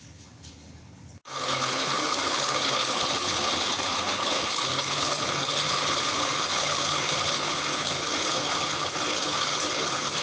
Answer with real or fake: fake